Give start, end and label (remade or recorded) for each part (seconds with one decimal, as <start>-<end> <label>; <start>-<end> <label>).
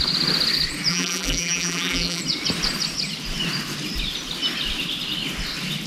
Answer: 0.0-0.9 recorded; 0.9-2.2 remade; 2.2-5.9 recorded